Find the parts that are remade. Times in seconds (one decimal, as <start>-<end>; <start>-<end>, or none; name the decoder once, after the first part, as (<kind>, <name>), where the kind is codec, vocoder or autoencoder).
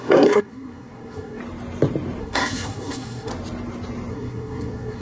0.0-1.4 (codec, SNAC); 2.2-3.3; 4.1-5.0